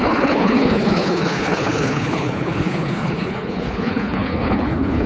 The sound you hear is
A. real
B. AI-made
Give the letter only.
B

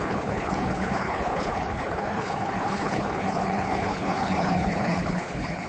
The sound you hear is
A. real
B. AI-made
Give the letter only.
B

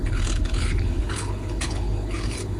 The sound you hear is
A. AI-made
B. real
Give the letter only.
A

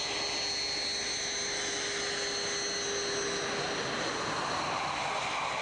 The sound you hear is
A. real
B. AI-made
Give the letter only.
A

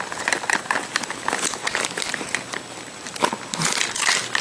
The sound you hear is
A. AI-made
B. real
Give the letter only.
B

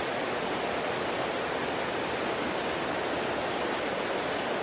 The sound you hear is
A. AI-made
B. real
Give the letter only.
B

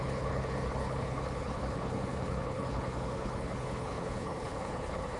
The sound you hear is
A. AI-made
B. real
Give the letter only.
A